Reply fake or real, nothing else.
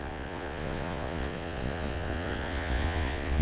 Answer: fake